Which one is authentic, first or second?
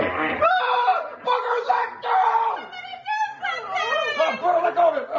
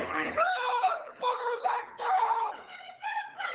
first